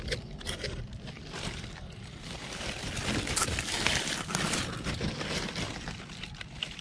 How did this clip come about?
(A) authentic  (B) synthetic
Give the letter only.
A